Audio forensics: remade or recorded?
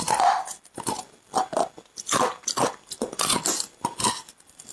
recorded